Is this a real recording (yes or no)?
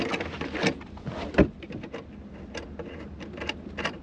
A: yes